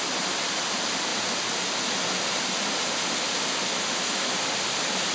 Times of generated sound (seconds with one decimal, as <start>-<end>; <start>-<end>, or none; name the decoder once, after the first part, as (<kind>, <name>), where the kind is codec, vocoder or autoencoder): none